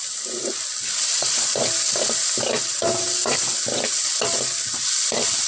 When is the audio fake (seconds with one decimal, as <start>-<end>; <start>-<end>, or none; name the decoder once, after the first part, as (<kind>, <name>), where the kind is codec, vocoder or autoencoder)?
1.1-1.7 (vocoder, Vocos)